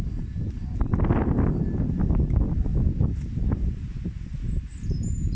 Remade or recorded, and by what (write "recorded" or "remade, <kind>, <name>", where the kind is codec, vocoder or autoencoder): recorded